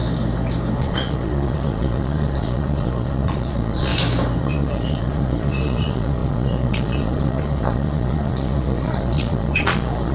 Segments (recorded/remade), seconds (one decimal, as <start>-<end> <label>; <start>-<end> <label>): 0.0-0.8 recorded; 0.8-3.9 remade; 3.9-4.4 recorded; 4.4-10.1 remade